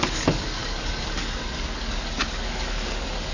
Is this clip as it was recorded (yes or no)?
no